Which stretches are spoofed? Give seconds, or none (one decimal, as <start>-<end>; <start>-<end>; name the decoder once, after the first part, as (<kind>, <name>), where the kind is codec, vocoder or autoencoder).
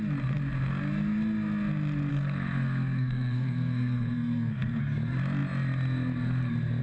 2.1-4.8 (codec, SNAC)